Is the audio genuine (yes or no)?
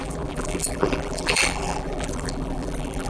no